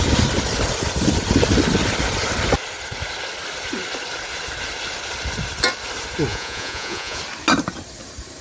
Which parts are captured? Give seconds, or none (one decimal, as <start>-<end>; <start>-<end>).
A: 0.0-6.3; 7.2-8.4